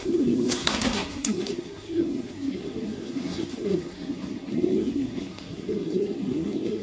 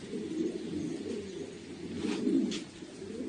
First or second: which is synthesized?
first